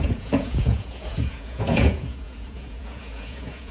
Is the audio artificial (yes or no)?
yes